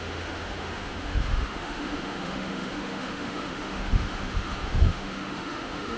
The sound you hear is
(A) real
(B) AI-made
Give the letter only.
B